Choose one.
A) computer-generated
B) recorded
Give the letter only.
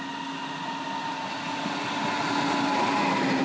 B